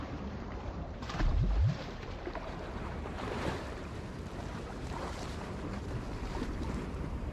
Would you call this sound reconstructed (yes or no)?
yes